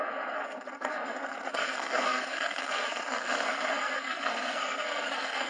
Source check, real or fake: fake